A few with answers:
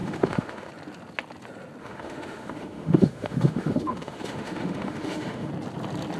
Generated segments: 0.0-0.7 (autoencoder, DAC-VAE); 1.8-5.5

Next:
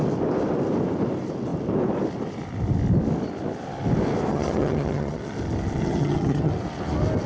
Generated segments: 4.3-5.2 (vocoder, HiFi-GAN); 5.8-6.5

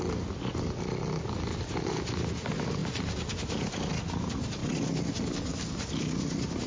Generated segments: 2.8-3.9 (vocoder, BigVGAN v2); 5.5-6.2

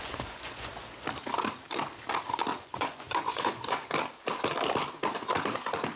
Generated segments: 0.0-0.7 (vocoder, Vocos); 2.5-3.9

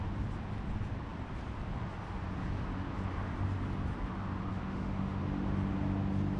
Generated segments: 4.5-5.2 (autoencoder, DAC-VAE)

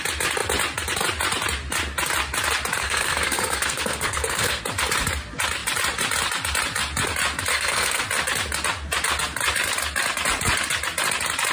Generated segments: 2.8-4.6 (codec, SNAC); 7.5-8.0

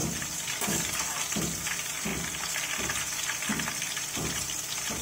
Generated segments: 0.0-1.3 (vocoder, BigVGAN v2)